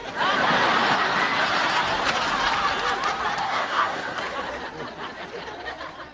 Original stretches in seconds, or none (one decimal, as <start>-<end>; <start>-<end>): 0.0-3.4; 4.2-6.1